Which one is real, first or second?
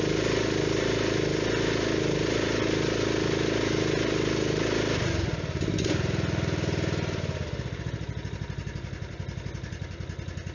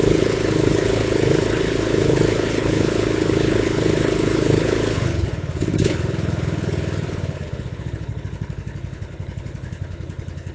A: first